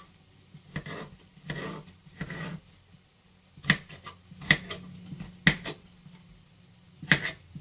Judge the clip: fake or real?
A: real